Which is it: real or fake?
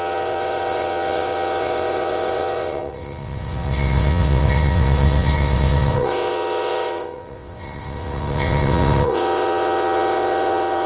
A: fake